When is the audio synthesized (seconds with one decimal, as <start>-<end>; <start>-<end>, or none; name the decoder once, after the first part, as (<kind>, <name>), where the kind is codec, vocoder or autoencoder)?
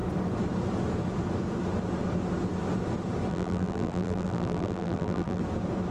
3.3-5.4 (vocoder, BigVGAN v2)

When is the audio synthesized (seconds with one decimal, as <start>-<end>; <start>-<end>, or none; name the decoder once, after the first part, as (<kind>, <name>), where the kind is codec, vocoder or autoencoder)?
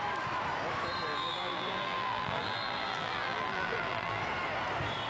1.1-4.2 (vocoder, BigVGAN v2)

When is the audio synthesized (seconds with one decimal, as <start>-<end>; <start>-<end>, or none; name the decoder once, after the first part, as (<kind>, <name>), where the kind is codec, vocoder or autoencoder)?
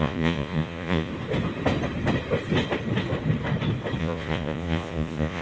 0.0-1.1 (vocoder, Vocos); 4.0-5.4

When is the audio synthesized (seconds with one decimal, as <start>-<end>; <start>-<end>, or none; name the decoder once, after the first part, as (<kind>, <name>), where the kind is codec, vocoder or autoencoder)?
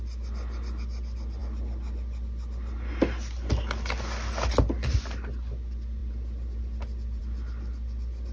none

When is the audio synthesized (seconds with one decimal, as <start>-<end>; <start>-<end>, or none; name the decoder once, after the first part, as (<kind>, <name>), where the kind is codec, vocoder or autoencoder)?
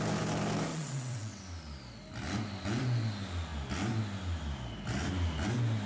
0.7-1.4 (vocoder, WaveNeXt)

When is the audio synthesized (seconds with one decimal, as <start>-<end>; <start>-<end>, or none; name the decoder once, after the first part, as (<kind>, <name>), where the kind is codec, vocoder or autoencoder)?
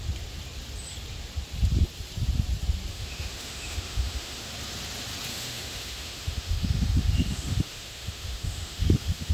2.9-4.5 (autoencoder, DAC-VAE); 5.3-9.3